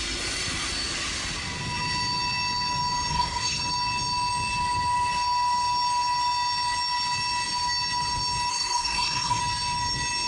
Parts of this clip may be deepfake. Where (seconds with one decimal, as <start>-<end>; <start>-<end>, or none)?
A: 3.1-3.6; 8.5-9.4